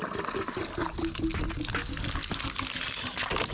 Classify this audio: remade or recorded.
recorded